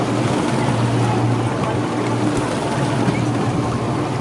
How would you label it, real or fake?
real